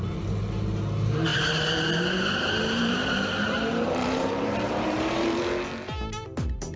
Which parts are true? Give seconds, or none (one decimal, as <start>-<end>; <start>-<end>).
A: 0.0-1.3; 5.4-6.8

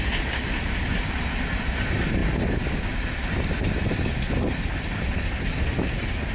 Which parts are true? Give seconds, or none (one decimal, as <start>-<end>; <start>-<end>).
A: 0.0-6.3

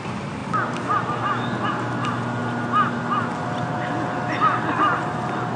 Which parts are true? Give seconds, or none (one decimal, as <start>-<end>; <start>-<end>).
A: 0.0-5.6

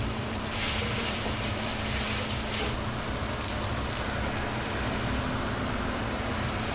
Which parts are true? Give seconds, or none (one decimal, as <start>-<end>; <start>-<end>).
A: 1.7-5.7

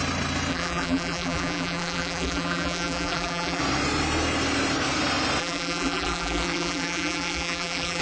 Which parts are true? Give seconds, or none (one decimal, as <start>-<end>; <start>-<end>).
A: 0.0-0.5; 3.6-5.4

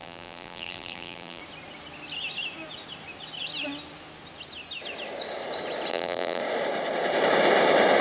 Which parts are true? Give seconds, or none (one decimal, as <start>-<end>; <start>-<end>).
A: 1.4-5.9; 6.4-8.0